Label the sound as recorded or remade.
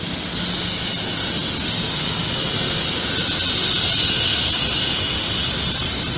recorded